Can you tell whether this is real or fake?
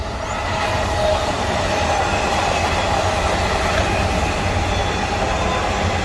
real